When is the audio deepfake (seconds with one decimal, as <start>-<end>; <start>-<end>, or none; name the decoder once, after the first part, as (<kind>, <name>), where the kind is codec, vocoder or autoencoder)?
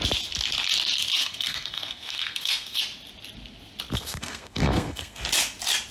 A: 1.2-2.8 (codec, SNAC); 4.0-5.2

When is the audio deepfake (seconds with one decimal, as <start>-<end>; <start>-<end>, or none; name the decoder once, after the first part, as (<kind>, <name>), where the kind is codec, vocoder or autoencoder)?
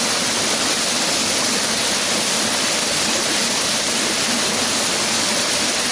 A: none